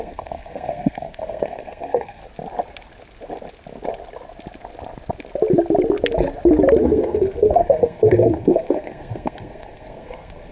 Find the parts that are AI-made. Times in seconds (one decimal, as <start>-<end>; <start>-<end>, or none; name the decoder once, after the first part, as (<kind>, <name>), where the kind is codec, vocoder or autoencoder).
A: 0.0-2.2 (codec, SNAC); 6.8-10.5